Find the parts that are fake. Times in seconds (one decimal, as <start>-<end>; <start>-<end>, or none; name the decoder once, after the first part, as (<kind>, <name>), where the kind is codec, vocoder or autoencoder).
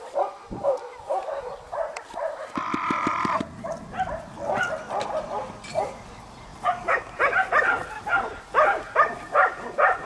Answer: none